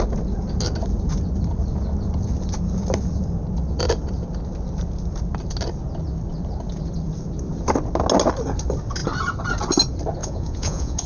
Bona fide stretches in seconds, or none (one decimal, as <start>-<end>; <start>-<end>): 0.0-10.2